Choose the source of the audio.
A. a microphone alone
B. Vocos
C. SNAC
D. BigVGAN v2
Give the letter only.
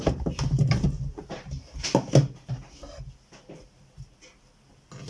A